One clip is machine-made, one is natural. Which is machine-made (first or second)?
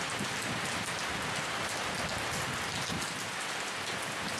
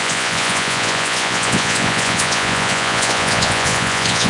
second